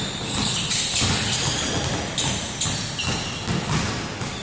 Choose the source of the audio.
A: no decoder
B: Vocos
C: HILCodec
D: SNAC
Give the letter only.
A